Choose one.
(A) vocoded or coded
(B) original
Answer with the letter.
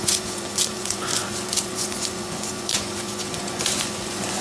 A